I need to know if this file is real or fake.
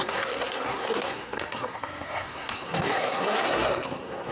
fake